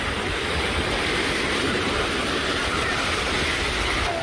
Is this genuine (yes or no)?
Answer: yes